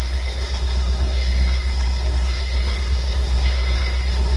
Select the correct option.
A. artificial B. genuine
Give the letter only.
A